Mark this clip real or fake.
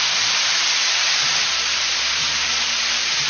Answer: fake